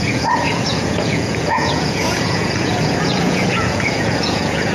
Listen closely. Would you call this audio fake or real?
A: fake